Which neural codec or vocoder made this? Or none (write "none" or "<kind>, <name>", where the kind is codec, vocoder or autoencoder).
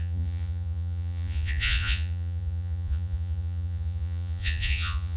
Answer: vocoder, Vocos